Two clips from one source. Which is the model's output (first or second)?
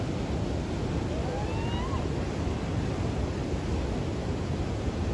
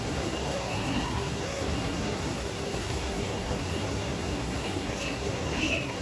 second